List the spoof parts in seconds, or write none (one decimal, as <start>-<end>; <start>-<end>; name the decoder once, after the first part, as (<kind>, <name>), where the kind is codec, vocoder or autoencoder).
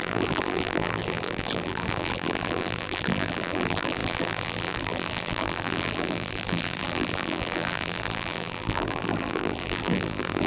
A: 0.0-10.5 (vocoder, BigVGAN v2)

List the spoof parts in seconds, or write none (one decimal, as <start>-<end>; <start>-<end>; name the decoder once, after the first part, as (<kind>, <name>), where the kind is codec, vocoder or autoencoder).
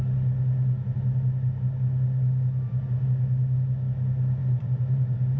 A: 4.4-5.4 (vocoder, BigVGAN v2)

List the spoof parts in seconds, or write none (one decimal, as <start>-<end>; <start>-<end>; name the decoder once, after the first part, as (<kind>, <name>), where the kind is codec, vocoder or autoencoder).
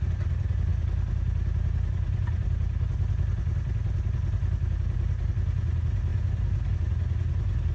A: none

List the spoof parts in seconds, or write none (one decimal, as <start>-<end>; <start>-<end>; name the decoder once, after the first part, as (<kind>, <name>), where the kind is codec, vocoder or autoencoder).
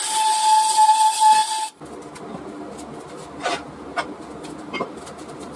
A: none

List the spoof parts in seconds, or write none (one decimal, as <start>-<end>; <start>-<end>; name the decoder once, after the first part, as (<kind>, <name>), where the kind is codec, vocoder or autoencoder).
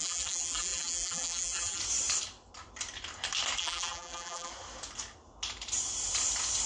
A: 0.0-1.8 (vocoder, BigVGAN v2); 3.6-4.5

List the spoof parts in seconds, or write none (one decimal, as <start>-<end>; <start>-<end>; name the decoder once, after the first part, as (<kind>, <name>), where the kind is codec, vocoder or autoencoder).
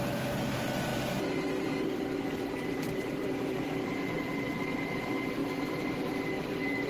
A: 0.9-5.0 (vocoder, BigVGAN v2); 5.4-6.9